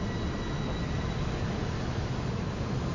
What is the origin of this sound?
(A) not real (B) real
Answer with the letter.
B